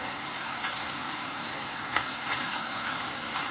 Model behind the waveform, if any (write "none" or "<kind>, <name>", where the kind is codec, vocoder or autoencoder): codec, SNAC